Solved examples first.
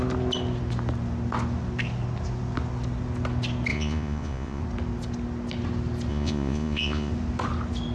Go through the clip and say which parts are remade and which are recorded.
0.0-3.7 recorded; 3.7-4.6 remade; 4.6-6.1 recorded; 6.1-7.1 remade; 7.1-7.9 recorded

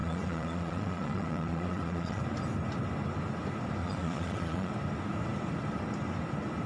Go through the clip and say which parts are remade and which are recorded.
0.0-2.2 remade; 2.2-3.8 recorded; 3.8-4.7 remade; 4.7-6.7 recorded

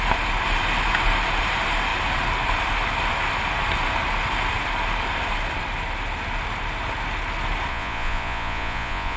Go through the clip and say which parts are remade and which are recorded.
0.0-7.7 recorded; 7.7-9.2 remade